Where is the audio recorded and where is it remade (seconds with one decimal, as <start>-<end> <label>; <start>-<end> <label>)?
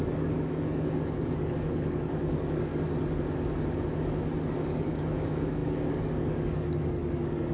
0.0-2.7 remade; 2.7-4.4 recorded; 4.4-7.5 remade